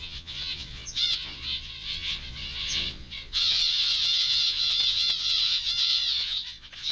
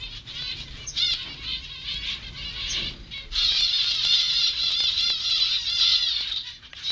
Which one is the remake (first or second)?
first